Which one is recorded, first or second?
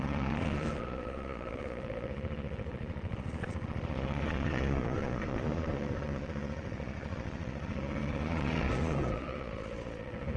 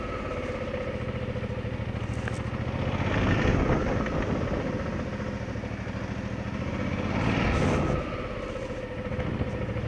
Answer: second